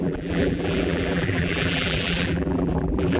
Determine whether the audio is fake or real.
fake